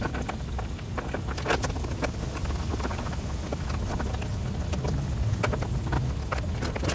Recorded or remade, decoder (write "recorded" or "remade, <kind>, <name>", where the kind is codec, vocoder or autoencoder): recorded